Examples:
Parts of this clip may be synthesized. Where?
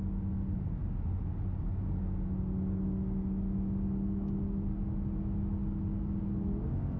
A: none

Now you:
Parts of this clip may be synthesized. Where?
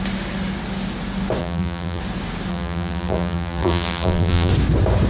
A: 1.4-2.0; 2.5-4.5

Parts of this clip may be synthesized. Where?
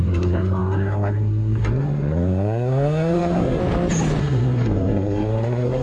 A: 0.0-3.6; 4.2-5.8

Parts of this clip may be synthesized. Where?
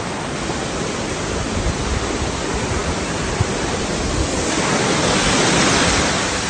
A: none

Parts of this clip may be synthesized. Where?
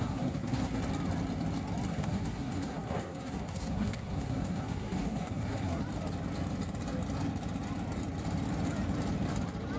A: 0.0-0.8; 1.9-5.8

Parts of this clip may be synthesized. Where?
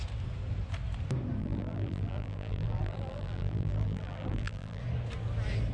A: 1.4-4.8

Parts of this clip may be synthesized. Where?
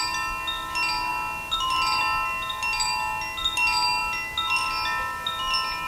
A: none